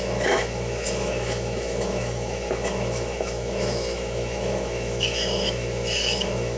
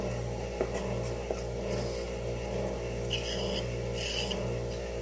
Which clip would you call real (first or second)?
second